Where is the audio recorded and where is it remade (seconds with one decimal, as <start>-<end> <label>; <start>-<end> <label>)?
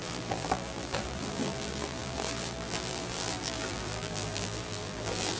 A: 0.0-5.4 remade